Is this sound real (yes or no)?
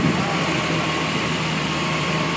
no